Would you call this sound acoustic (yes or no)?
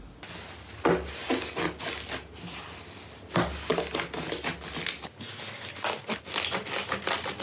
yes